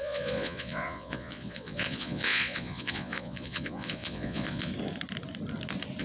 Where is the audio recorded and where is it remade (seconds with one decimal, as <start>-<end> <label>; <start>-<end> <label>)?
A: 0.0-4.7 remade; 4.7-6.0 recorded